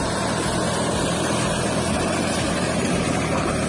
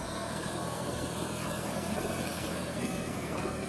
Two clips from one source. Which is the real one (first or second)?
first